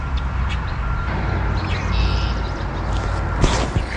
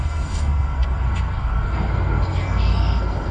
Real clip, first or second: first